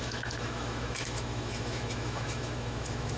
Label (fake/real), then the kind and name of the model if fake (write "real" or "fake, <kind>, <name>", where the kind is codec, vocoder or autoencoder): fake, autoencoder, DAC-VAE